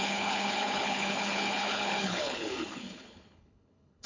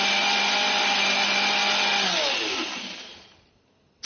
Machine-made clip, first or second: first